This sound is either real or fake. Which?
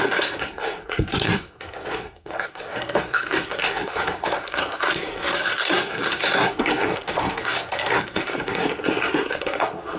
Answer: fake